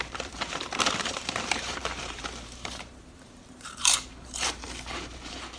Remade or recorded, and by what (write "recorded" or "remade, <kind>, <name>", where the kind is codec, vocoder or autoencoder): remade, vocoder, BigVGAN v2